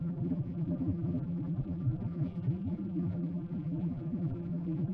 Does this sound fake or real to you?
fake